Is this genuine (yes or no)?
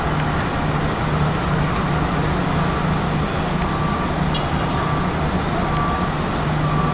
yes